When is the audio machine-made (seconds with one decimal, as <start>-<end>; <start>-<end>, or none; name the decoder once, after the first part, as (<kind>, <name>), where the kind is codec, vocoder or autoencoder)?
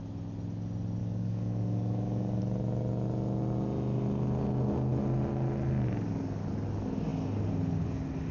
1.0-2.4 (codec, DAC)